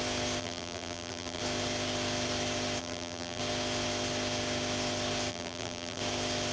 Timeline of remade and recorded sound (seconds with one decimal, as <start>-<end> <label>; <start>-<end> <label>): 0.0-0.4 recorded; 0.4-1.4 remade; 1.4-2.8 recorded; 2.8-3.4 remade; 3.4-5.3 recorded; 5.3-6.0 remade; 6.0-6.5 recorded